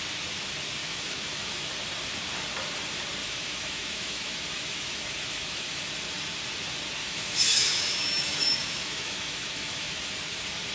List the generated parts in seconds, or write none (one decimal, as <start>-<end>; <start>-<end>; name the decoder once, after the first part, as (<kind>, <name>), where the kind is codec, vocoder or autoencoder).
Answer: 0.8-1.7 (autoencoder, DAC-VAE); 3.2-5.9; 7.0-10.1